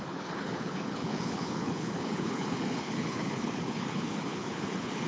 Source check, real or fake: fake